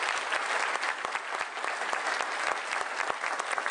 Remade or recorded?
recorded